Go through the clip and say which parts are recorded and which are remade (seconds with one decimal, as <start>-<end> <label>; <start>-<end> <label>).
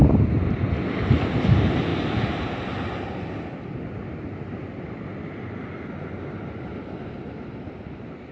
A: 0.0-0.6 remade; 0.6-8.3 recorded